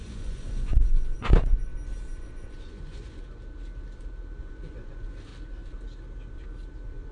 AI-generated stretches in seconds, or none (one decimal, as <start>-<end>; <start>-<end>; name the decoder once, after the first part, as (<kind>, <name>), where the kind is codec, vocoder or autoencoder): 0.0-1.7 (vocoder, Vocos); 2.2-3.2; 4.4-5.3